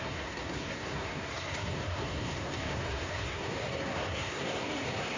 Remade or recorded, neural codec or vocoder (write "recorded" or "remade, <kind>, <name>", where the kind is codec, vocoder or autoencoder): remade, codec, SNAC